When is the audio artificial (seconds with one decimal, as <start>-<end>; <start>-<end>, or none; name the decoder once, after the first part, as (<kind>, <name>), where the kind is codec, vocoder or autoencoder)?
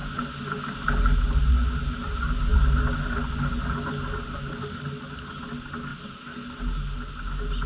none